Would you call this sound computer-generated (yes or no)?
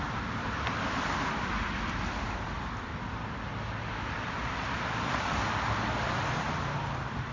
yes